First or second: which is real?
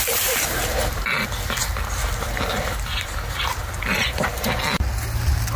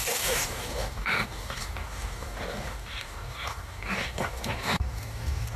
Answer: first